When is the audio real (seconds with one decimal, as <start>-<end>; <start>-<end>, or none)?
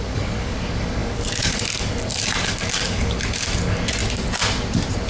4.0-5.1